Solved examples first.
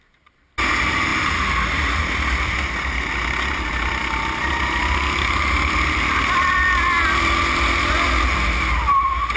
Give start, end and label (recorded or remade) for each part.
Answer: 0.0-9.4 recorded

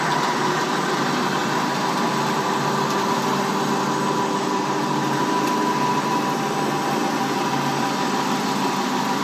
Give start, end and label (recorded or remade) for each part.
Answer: 0.0-9.2 recorded

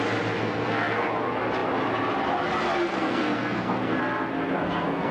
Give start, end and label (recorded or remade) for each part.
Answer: 0.0-0.4 recorded; 0.4-1.1 remade; 1.1-2.9 recorded; 2.9-4.0 remade; 4.0-4.6 recorded; 4.6-5.1 remade